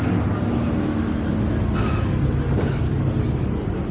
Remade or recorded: recorded